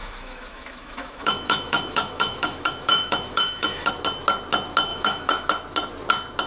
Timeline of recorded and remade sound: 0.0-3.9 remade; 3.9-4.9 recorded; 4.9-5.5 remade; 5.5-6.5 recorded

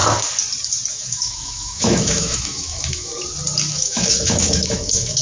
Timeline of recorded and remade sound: 0.0-0.9 recorded; 0.9-3.1 remade; 3.1-3.7 recorded; 3.7-5.2 remade

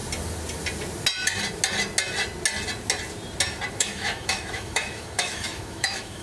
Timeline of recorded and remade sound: 0.0-3.7 recorded; 3.7-6.2 remade

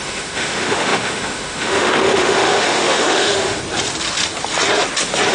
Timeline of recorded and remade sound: 0.0-3.6 remade; 3.6-5.3 recorded